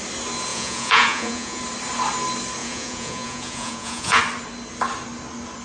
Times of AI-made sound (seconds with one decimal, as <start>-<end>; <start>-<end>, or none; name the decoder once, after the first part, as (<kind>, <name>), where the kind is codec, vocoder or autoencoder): 0.5-1.6 (vocoder, Vocos); 2.6-4.2

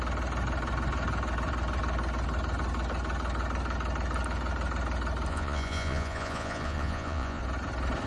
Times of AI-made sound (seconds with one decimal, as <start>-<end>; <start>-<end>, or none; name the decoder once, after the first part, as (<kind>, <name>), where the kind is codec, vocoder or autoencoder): 5.3-7.4 (vocoder, Vocos)